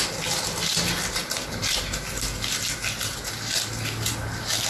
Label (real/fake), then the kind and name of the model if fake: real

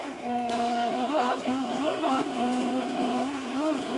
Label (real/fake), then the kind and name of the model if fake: fake, codec, SNAC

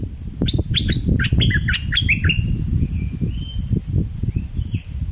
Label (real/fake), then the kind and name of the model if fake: real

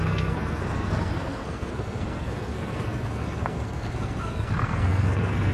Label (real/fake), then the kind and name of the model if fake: fake, codec, SNAC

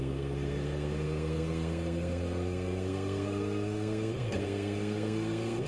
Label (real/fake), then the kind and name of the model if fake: fake, codec, SNAC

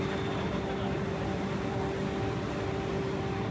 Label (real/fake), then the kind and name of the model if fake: real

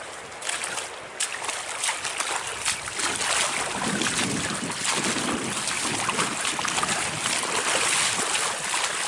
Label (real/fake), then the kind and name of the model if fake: real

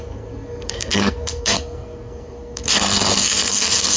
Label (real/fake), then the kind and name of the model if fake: fake, codec, SNAC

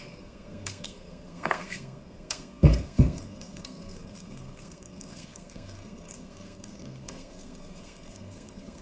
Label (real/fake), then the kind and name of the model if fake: fake, codec, SNAC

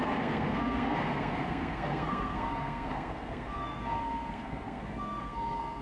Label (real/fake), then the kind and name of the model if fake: fake, codec, SNAC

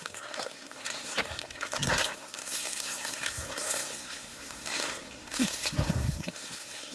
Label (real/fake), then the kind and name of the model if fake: fake, codec, SNAC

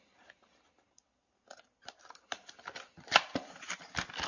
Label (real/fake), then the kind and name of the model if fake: real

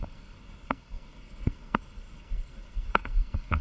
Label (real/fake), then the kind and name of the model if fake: fake, codec, SNAC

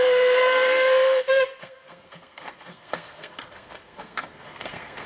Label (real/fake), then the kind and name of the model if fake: fake, codec, SNAC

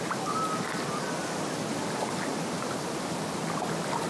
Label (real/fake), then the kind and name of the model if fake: real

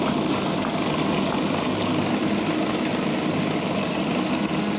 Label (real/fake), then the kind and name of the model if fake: real